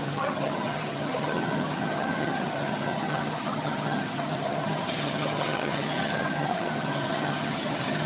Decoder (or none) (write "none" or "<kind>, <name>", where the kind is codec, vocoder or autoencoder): vocoder, HiFi-GAN